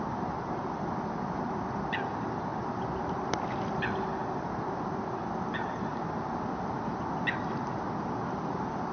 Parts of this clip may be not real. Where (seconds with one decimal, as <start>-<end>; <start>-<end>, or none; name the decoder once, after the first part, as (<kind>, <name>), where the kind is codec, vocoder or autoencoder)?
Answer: none